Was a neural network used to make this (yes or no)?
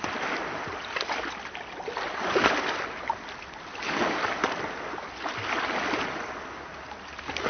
no